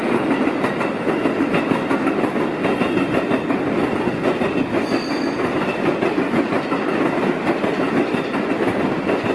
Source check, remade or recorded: recorded